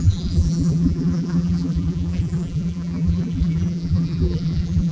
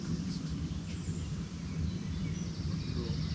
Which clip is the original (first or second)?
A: second